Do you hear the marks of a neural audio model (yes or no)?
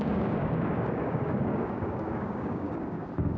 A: yes